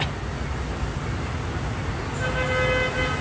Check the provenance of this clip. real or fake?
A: real